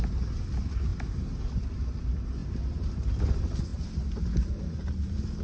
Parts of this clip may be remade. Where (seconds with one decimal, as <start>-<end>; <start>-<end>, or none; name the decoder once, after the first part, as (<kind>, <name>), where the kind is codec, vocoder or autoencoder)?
0.9-1.5 (vocoder, BigVGAN v2); 3.7-5.4